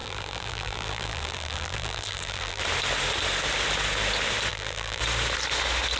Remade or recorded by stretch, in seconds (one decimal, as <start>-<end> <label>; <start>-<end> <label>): 0.0-2.6 remade; 2.6-4.5 recorded; 4.5-5.0 remade; 5.0-6.0 recorded

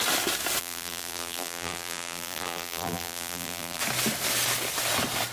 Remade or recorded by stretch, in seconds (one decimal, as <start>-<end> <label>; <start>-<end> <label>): 0.0-0.6 recorded; 0.6-3.8 remade; 3.8-5.3 recorded